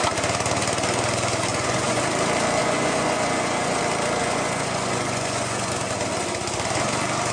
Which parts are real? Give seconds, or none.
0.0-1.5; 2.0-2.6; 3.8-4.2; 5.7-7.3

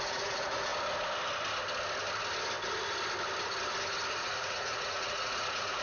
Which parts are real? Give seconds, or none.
0.7-4.2

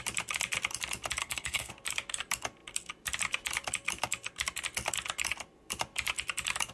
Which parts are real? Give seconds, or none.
0.0-1.2; 1.7-6.7

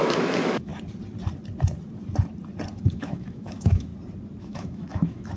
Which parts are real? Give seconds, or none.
0.7-2.7; 3.9-4.4

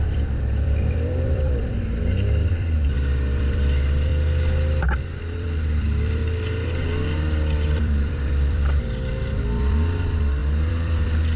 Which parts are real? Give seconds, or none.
4.1-5.2; 6.2-7.8

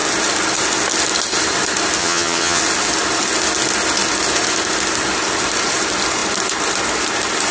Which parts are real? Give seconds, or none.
0.0-2.0; 2.6-7.5